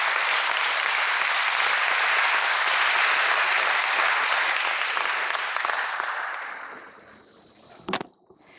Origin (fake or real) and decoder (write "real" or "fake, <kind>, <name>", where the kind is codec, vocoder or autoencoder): real